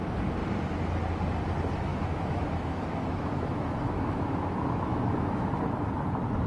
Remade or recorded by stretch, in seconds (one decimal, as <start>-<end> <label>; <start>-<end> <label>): 0.0-1.9 recorded; 1.9-5.5 remade; 5.5-6.5 recorded